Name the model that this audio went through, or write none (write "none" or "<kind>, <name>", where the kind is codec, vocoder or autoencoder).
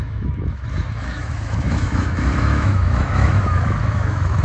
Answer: autoencoder, DAC-VAE